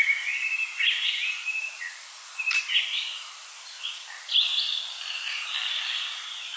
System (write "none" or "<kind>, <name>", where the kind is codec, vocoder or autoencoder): vocoder, BigVGAN v2